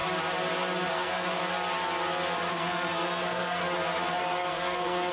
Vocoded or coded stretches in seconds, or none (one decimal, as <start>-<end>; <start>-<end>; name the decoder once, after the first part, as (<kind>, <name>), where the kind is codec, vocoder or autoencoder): 0.9-1.4 (codec, SNAC); 2.5-3.6; 4.2-5.1